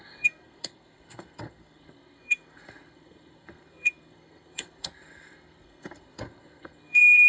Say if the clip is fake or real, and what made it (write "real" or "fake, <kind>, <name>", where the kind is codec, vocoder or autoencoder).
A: fake, codec, SNAC